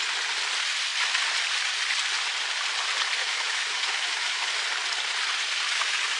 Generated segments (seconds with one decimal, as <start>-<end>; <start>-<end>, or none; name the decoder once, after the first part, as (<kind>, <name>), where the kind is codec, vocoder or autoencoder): 3.2-4.5 (autoencoder, DAC-VAE)